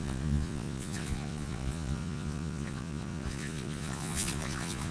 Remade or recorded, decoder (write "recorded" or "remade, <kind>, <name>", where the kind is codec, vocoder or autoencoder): remade, vocoder, Vocos